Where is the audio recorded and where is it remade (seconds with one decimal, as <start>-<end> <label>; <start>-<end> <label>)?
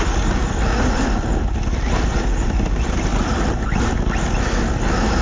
0.0-5.2 recorded